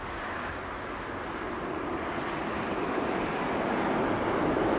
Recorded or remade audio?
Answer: remade